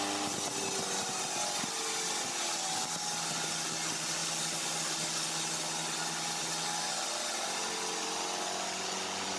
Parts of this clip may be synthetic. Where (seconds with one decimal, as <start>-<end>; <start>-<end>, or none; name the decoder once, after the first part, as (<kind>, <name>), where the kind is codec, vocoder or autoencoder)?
none